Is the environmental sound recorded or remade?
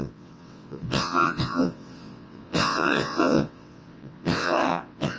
remade